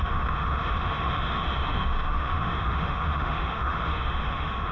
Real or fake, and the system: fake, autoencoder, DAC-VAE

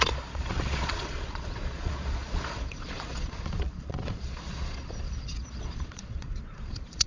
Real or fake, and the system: fake, vocoder, Vocos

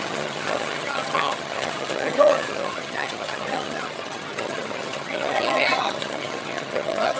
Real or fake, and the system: fake, vocoder, HiFi-GAN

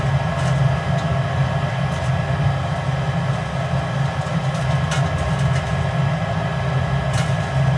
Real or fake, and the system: real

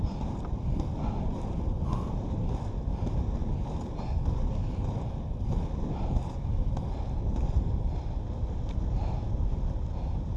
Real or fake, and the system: real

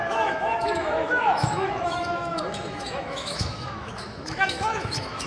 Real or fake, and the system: fake, autoencoder, DAC-VAE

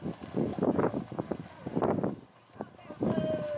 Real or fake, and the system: real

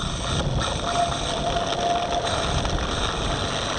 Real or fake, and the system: real